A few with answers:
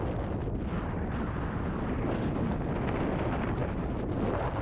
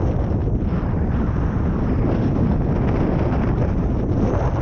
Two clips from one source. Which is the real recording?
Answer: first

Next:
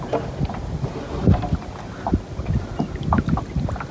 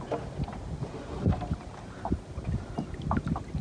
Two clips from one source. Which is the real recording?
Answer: first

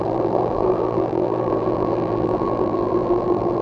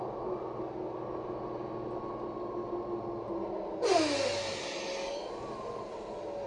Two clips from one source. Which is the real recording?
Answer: second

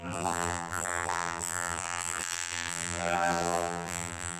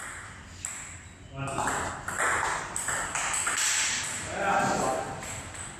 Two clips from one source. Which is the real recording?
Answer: second